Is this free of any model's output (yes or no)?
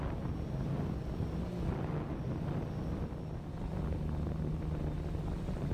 yes